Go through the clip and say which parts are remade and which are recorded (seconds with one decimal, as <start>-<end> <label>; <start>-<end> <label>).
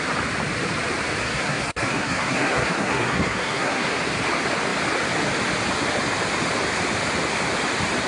0.0-1.2 recorded; 1.2-4.0 remade; 4.0-8.1 recorded